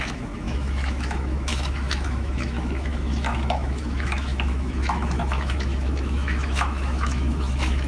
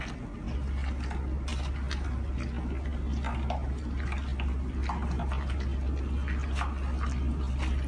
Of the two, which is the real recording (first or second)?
second